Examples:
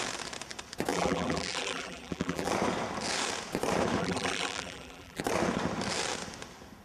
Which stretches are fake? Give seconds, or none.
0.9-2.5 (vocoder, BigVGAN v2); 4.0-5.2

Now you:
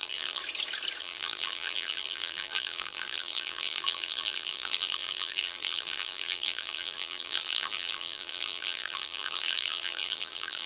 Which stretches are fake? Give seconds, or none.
0.0-0.4 (vocoder, BigVGAN v2); 1.0-10.7

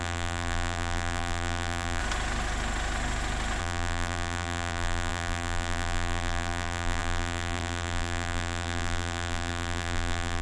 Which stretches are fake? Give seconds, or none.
0.0-2.0 (vocoder, BigVGAN v2); 3.6-10.4

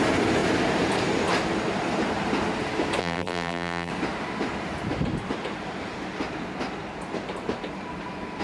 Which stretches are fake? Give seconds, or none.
3.0-3.9 (vocoder, BigVGAN v2)

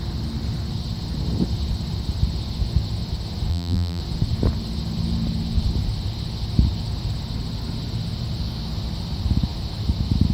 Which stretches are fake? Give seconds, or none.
3.5-4.0 (vocoder, BigVGAN v2)

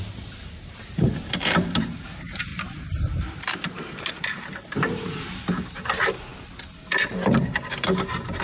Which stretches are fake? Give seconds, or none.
0.0-6.3 (vocoder, BigVGAN v2); 7.1-8.4

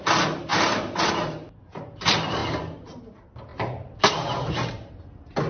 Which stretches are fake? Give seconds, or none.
0.5-1.1 (vocoder, BigVGAN v2); 3.5-4.9

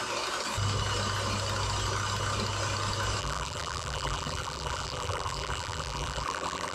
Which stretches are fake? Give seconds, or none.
3.2-6.7 (vocoder, BigVGAN v2)